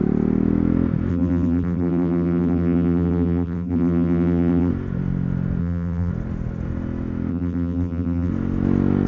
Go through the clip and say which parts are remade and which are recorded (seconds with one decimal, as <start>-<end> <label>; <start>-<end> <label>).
0.0-1.1 recorded; 1.1-4.7 remade; 4.7-5.6 recorded; 5.6-6.1 remade; 6.1-7.3 recorded; 7.3-8.3 remade; 8.3-9.1 recorded